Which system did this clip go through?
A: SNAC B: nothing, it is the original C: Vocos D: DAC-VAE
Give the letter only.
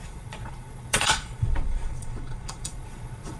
C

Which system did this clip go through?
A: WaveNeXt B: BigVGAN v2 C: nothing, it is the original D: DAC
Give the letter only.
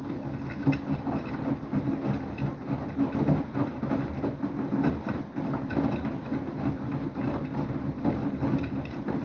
C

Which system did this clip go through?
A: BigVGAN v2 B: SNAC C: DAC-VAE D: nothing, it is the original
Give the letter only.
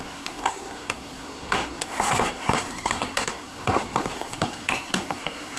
B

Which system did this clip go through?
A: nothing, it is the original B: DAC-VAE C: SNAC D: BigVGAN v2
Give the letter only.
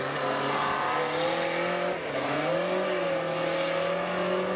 A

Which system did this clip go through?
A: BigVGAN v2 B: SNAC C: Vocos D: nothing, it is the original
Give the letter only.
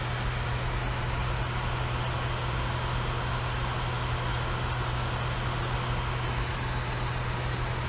D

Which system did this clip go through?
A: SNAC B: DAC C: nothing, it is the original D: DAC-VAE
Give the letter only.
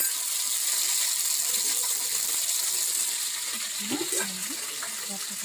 C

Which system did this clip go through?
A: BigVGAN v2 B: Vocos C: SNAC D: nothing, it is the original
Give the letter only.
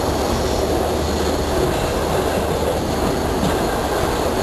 D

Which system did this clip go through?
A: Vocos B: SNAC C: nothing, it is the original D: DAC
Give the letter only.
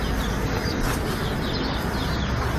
C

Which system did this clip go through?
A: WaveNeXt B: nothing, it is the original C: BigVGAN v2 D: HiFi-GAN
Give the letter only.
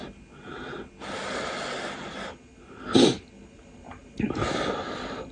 B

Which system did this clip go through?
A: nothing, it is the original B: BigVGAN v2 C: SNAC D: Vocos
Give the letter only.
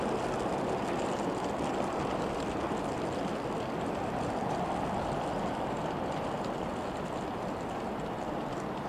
A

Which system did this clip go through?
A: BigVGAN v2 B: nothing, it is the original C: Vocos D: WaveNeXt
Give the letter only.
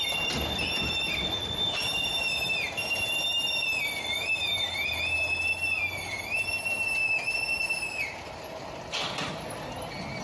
B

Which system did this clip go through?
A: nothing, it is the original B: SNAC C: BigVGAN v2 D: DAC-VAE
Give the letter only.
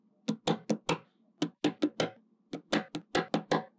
A